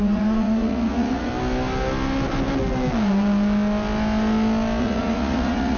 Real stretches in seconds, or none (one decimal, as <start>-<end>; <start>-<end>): 1.3-4.8